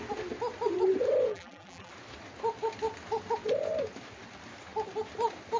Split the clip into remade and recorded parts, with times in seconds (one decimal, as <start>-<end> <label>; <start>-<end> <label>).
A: 0.0-1.3 recorded; 1.3-1.9 remade; 1.9-5.6 recorded